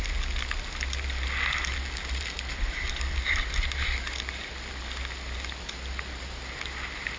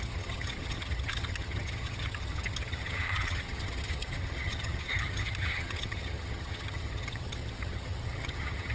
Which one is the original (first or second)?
first